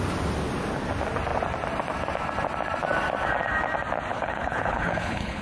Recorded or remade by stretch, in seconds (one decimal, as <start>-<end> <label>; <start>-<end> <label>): 0.0-4.1 recorded; 4.1-5.4 remade